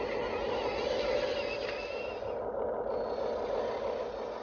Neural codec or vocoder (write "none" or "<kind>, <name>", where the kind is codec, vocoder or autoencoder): none